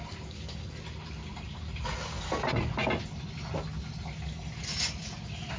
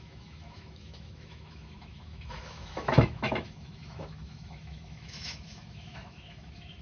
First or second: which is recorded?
first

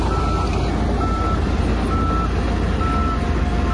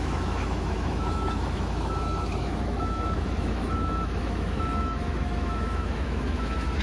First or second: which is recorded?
first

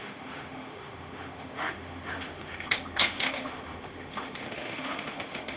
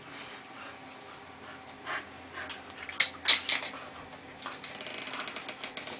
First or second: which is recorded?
second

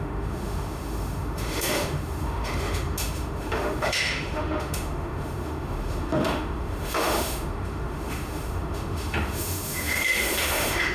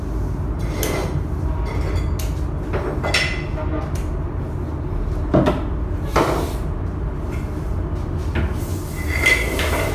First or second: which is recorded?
second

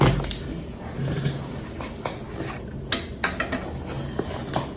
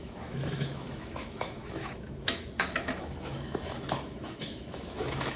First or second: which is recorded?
first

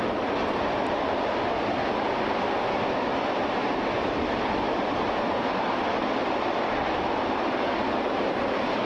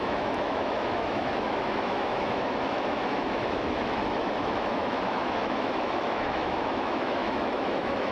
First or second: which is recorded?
first